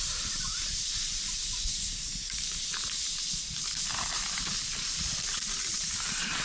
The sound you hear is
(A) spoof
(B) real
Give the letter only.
A